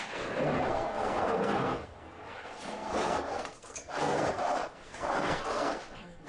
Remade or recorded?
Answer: remade